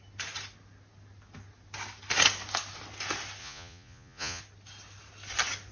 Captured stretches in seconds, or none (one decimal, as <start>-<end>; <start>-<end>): 0.0-3.4; 4.4-5.7